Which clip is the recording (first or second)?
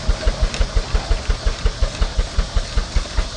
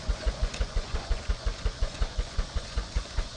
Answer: first